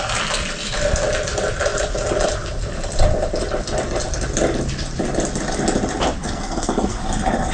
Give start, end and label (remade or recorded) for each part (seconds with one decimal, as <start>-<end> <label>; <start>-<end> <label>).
0.0-6.2 recorded; 6.2-7.0 remade; 7.0-7.5 recorded